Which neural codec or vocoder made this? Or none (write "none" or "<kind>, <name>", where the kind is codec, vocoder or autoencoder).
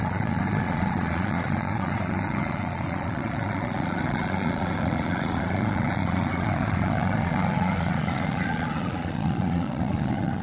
vocoder, Vocos